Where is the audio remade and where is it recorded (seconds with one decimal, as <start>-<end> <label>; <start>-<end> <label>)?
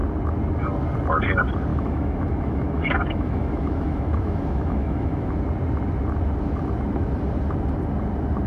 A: 0.0-1.7 recorded; 1.7-5.3 remade; 5.3-8.5 recorded